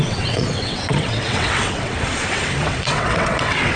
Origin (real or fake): fake